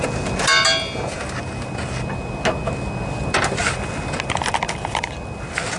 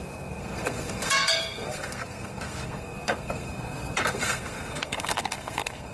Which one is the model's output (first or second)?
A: second